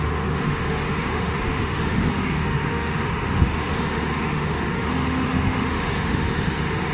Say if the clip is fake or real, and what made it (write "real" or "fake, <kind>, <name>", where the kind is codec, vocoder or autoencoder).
fake, autoencoder, DAC-VAE